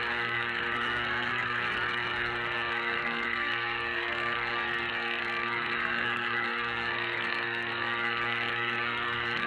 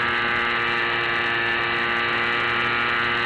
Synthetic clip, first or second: first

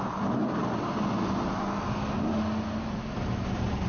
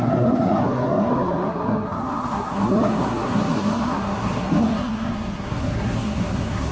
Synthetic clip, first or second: second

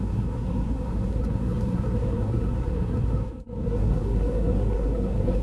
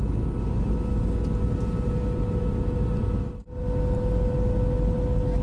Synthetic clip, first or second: first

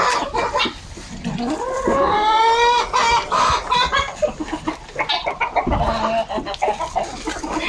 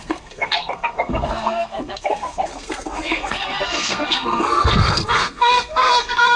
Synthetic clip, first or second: second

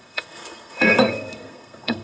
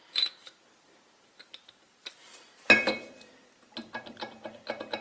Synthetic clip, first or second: first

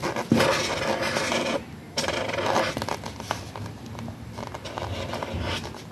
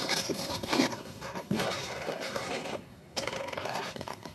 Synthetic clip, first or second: second